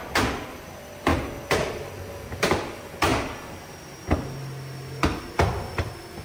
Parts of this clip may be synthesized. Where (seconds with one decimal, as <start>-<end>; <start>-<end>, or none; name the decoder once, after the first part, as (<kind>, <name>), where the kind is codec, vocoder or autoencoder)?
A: none